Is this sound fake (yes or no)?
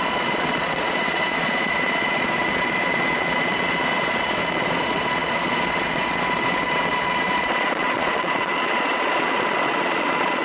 yes